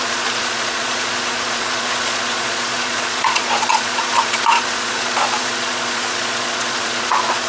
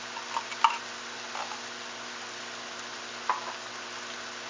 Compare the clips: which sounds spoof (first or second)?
first